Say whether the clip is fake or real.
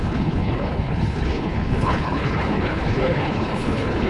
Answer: fake